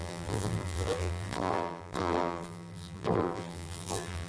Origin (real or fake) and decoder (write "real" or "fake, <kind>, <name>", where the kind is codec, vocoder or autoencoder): fake, vocoder, BigVGAN v2